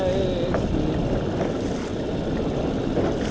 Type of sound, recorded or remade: recorded